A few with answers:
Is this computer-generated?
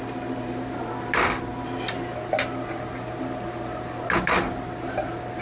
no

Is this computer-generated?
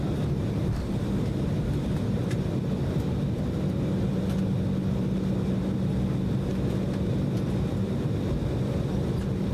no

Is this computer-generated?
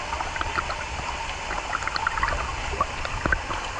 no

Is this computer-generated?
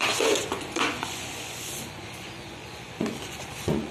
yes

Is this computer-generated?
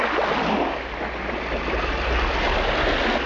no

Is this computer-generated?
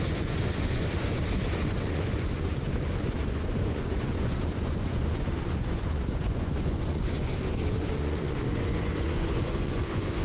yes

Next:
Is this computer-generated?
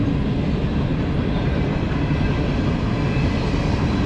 no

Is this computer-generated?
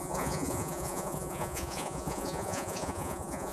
yes